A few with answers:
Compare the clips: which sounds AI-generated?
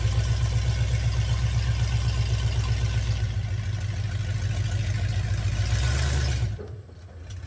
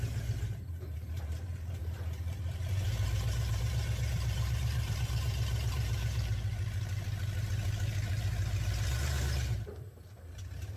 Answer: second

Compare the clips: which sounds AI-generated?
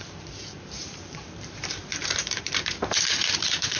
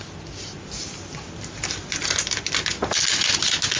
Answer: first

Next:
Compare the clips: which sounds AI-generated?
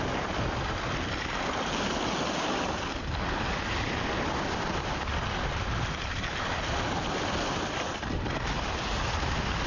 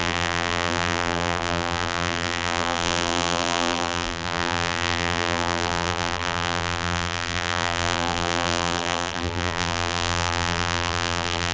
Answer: second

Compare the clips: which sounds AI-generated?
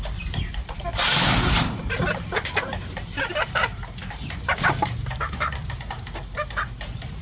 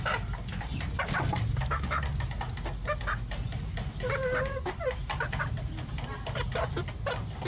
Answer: first